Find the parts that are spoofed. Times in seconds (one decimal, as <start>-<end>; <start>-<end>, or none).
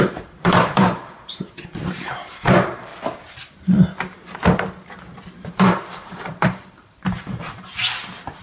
0.0-2.9; 5.5-7.8